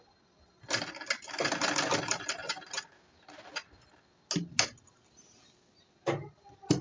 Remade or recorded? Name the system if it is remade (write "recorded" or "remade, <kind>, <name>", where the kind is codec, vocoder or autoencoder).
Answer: recorded